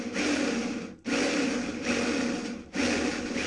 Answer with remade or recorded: recorded